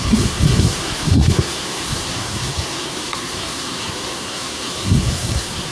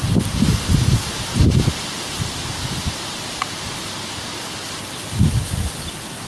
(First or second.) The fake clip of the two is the first